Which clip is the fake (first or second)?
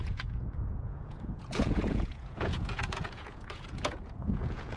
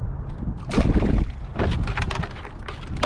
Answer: first